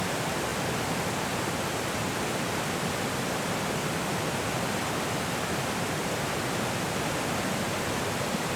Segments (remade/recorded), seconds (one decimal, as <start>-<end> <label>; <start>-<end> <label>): 0.0-8.6 recorded